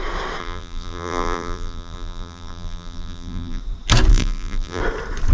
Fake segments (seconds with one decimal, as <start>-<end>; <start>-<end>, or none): 0.4-3.6; 4.1-4.8

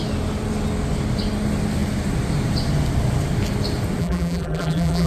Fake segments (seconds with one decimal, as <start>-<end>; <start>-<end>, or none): 4.0-5.1

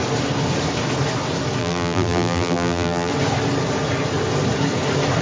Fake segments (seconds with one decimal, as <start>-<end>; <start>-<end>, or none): 1.6-3.1

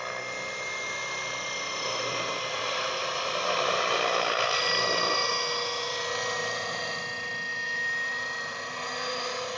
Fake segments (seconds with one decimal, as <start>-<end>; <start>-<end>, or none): 1.9-5.3; 6.4-7.0; 7.5-8.9

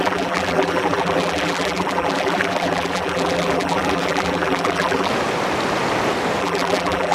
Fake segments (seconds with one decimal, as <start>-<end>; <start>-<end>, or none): 0.0-5.1; 6.4-7.1

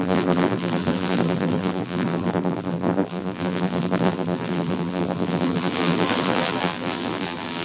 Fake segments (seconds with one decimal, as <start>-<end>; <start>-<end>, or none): 0.0-7.6

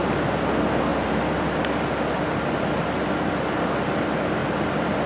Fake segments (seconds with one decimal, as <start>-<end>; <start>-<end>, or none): 0.9-1.6; 4.4-5.1